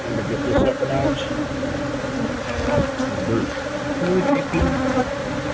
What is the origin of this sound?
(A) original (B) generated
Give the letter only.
A